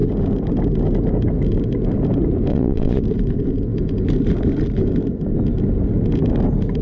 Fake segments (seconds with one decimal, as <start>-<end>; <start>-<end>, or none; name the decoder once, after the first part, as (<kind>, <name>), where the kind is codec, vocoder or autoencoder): 2.5-3.0 (vocoder, Vocos)